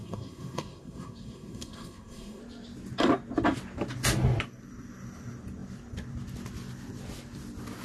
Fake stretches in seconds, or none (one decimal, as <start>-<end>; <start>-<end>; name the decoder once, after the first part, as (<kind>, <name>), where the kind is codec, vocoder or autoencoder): 0.0-2.4 (codec, SNAC)